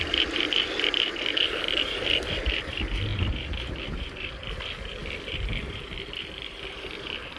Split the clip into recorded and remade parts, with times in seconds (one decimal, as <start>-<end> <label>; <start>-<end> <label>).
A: 0.0-7.4 recorded